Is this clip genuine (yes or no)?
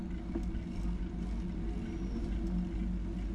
yes